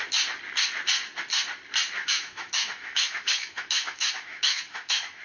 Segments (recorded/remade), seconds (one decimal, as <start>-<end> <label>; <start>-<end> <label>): 0.0-2.0 recorded; 2.0-5.2 remade